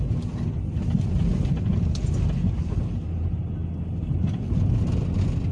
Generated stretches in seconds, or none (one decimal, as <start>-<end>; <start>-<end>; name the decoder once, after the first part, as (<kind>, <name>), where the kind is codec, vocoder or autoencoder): none